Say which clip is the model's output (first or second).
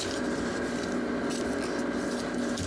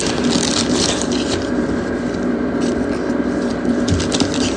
second